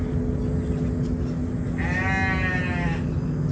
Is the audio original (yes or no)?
yes